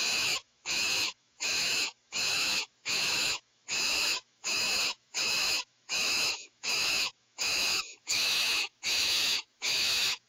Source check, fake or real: fake